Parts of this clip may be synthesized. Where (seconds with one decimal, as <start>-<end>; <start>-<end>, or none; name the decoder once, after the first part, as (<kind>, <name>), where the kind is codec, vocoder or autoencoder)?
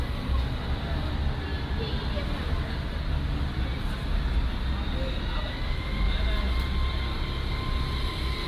none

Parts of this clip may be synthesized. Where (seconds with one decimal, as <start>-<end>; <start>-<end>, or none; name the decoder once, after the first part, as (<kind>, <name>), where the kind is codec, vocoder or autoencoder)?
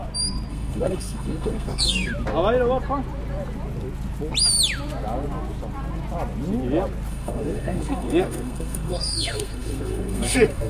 0.5-2.1 (codec, SNAC); 7.1-10.7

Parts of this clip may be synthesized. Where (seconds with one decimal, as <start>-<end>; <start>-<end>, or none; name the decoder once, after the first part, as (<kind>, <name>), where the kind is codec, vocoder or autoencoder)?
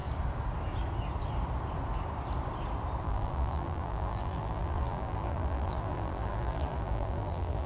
3.0-7.7 (vocoder, BigVGAN v2)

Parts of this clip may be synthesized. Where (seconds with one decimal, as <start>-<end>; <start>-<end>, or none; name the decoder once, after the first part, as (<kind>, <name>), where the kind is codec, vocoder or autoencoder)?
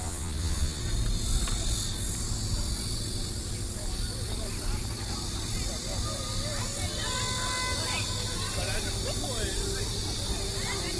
0.0-0.8 (vocoder, Vocos)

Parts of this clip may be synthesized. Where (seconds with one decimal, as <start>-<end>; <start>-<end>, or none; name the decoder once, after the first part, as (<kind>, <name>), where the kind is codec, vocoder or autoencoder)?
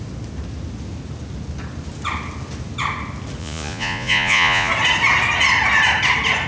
3.4-4.7 (vocoder, Vocos)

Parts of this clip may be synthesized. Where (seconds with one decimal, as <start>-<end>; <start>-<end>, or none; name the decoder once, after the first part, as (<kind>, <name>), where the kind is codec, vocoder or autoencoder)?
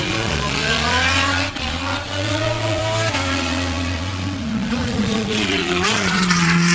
0.0-2.8 (vocoder, Vocos); 3.3-6.7